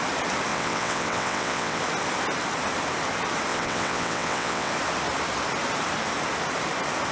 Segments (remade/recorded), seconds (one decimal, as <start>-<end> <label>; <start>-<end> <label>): 0.0-0.5 recorded; 0.5-1.8 remade; 1.8-3.5 recorded; 3.5-4.7 remade; 4.7-7.1 recorded